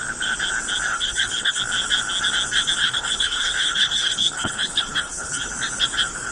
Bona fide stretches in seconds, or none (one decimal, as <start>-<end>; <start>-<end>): 0.0-0.9; 1.6-2.8; 5.5-6.3